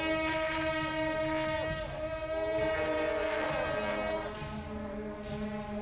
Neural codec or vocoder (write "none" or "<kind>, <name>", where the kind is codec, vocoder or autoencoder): none